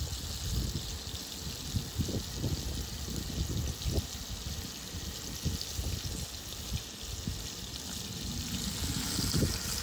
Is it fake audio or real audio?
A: real